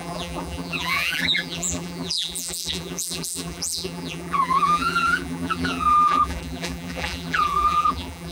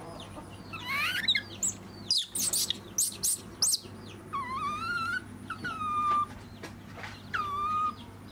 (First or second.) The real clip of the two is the second